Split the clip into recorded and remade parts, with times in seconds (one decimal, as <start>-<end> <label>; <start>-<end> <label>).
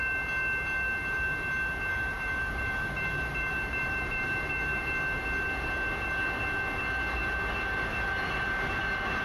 0.0-1.9 recorded; 1.9-4.8 remade; 4.8-9.2 recorded